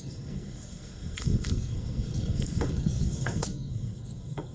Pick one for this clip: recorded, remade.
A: remade